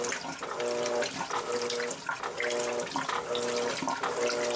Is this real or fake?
real